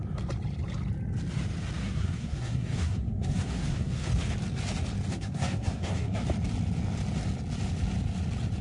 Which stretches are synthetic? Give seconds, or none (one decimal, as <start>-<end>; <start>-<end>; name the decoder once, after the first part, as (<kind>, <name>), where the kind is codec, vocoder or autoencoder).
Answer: 1.8-4.1 (codec, SNAC); 5.1-6.2